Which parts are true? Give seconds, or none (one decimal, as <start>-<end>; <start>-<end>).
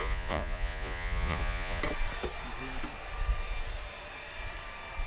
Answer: 1.8-5.1